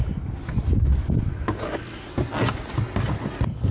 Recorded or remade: recorded